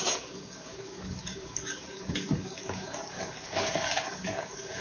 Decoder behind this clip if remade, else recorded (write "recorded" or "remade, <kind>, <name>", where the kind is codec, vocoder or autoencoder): remade, codec, DAC